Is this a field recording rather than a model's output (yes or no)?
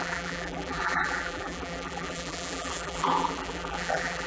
no